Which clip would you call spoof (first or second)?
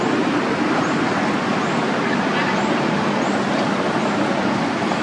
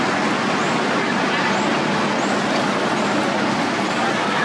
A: first